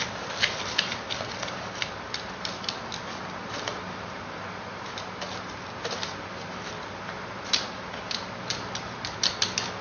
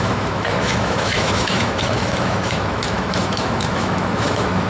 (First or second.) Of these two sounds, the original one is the first